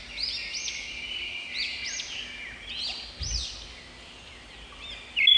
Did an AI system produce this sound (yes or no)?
no